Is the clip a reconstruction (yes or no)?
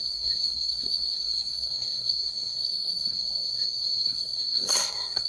yes